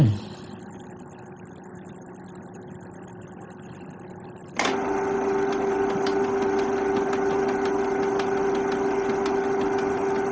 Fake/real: real